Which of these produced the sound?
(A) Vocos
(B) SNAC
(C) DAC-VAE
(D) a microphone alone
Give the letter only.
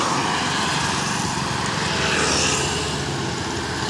D